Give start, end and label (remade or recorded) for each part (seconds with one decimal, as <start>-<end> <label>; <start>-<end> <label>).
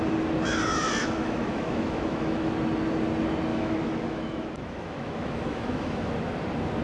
0.0-1.0 recorded; 1.0-2.5 remade; 2.5-3.5 recorded; 3.5-6.1 remade; 6.1-6.8 recorded